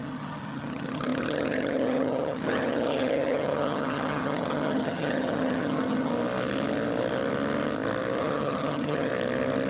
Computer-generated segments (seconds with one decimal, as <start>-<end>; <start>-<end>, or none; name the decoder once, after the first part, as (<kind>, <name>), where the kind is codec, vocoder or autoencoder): 0.0-6.1 (vocoder, HiFi-GAN); 8.2-9.1